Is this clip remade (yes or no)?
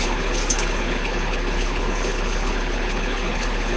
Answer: yes